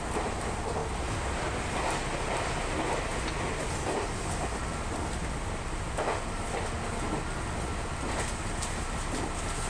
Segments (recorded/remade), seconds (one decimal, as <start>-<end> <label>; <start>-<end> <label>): 0.0-9.7 recorded

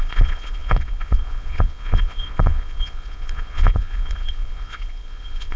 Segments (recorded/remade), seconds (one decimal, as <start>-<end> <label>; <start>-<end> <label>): 0.0-5.6 remade

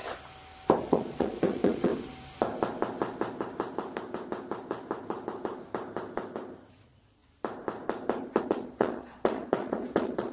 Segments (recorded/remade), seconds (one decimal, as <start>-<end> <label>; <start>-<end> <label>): 0.0-0.8 recorded; 0.8-1.9 remade; 1.9-6.7 recorded; 6.7-7.2 remade; 7.2-8.4 recorded; 8.4-10.3 remade

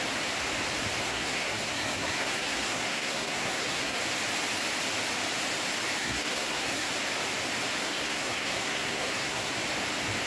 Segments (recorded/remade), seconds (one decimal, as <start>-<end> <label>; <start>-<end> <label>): 0.0-1.0 recorded; 1.0-4.0 remade; 4.0-6.0 recorded; 6.0-6.9 remade; 6.9-7.8 recorded; 7.8-9.5 remade; 9.5-10.3 recorded

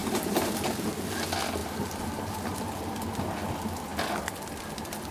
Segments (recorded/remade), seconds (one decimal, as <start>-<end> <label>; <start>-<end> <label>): 0.0-0.9 remade; 0.9-1.6 recorded; 1.6-2.6 remade; 2.6-5.1 recorded

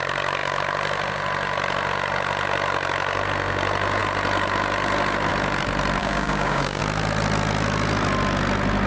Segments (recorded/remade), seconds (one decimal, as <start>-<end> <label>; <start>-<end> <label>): 0.0-6.0 recorded; 6.0-6.8 remade; 6.8-8.9 recorded

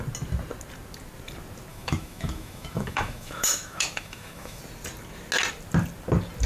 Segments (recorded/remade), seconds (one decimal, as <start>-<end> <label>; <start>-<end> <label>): 0.0-1.7 recorded; 1.7-4.6 remade; 4.6-6.5 recorded